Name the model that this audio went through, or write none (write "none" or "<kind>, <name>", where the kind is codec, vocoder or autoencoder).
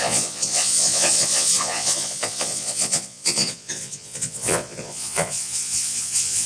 vocoder, Vocos